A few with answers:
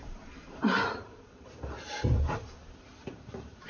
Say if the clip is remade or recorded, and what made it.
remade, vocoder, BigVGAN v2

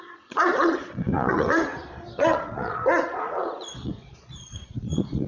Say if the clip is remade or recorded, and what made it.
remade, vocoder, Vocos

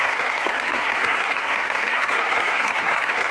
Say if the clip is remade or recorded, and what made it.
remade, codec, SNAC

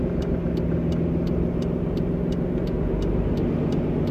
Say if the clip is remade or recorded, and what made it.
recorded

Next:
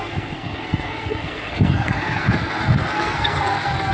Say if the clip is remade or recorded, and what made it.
remade, codec, SNAC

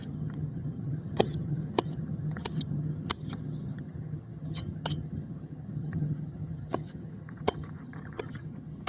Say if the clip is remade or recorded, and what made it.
remade, vocoder, HiFi-GAN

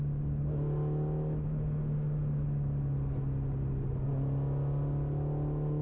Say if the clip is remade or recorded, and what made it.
recorded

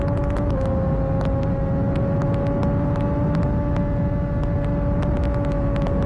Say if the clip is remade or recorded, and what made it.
recorded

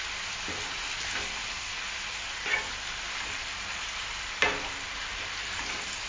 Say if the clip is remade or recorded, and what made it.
recorded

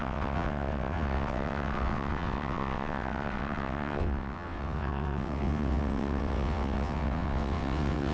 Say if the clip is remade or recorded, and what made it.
remade, vocoder, WaveNeXt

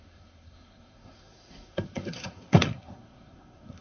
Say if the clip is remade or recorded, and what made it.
remade, codec, SNAC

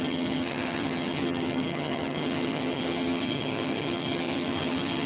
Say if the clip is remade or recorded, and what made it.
remade, vocoder, HiFi-GAN